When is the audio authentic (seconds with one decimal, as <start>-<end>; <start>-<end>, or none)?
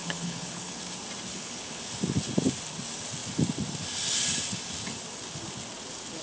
0.8-1.3; 1.8-6.2